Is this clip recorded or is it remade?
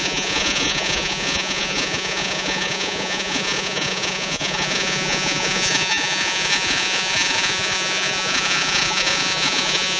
remade